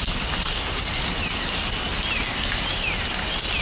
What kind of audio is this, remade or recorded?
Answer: recorded